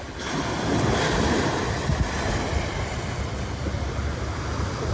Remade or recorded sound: recorded